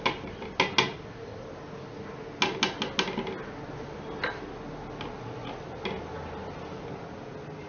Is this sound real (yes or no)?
yes